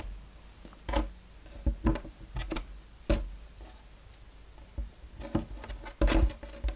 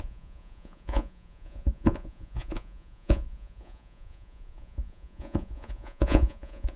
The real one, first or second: first